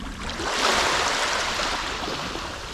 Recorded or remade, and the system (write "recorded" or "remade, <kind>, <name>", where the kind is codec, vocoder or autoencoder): recorded